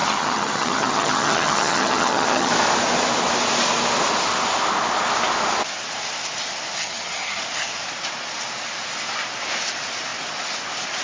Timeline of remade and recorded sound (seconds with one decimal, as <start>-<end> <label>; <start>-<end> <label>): 0.0-2.5 remade; 2.5-6.8 recorded; 6.8-7.4 remade; 7.4-11.0 recorded